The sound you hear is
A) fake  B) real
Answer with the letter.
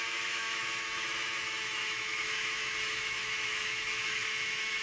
A